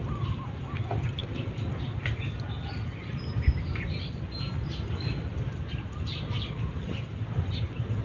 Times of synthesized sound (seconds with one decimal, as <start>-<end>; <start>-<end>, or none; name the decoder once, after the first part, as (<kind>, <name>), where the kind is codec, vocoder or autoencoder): none